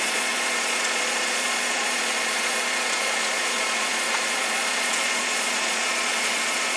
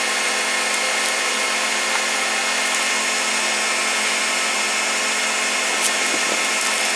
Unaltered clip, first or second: second